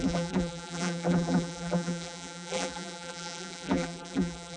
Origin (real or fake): fake